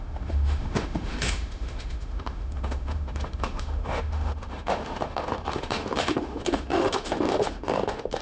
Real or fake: fake